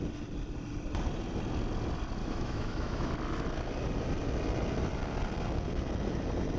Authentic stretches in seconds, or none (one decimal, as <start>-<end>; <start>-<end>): 0.0-2.2; 3.1-6.6